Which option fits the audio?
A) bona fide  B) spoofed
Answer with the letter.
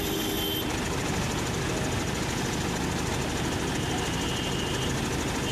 A